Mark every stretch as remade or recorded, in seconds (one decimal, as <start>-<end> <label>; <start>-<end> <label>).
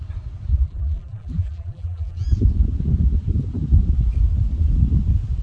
0.0-0.5 recorded; 0.5-2.3 remade; 2.3-5.4 recorded